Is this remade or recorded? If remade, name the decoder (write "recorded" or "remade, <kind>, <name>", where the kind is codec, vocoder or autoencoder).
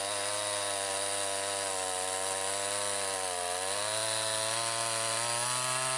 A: recorded